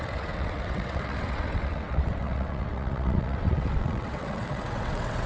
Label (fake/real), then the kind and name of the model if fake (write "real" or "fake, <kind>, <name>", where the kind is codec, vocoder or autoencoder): fake, vocoder, WaveNeXt